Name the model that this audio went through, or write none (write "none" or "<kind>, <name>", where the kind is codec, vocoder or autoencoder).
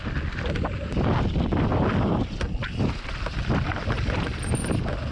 none